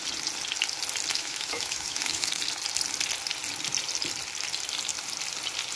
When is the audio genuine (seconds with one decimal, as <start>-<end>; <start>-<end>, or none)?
0.0-1.1; 2.4-5.8